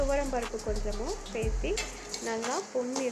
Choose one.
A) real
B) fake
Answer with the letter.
A